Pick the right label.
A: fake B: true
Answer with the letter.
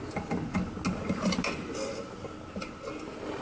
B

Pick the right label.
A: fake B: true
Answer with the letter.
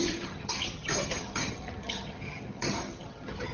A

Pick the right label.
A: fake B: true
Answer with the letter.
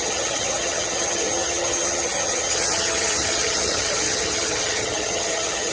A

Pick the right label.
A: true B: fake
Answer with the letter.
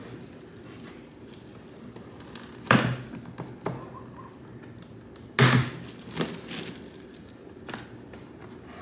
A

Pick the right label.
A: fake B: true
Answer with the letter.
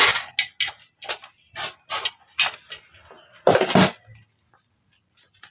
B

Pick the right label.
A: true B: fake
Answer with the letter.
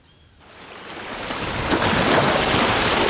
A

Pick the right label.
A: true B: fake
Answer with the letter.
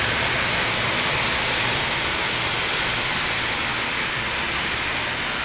A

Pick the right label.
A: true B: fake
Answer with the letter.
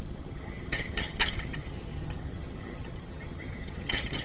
B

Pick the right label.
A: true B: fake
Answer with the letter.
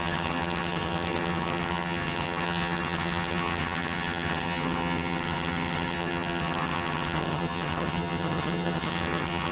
B